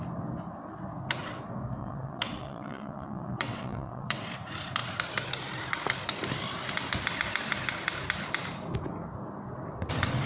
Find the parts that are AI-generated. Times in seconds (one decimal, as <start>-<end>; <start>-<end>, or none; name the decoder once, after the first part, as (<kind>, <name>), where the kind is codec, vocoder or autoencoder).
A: 1.8-4.3 (vocoder, WaveNeXt)